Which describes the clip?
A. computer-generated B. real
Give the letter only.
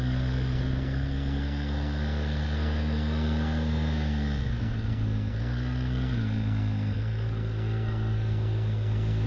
A